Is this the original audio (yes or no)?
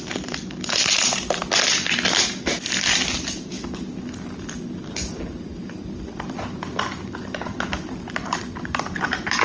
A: yes